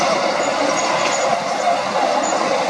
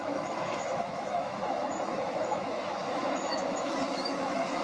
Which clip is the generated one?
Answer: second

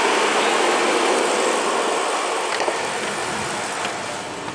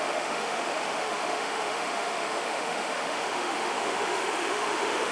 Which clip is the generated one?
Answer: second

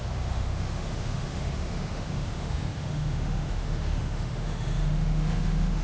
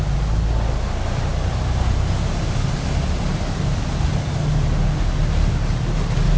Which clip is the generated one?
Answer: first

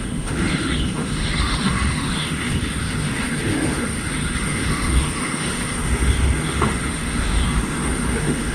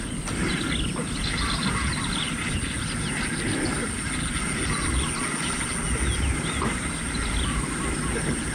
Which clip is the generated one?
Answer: first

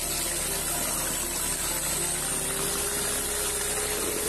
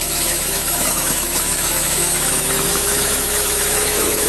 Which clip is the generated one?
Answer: second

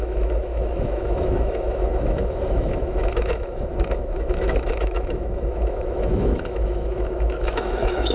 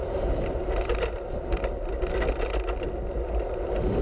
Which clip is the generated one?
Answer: first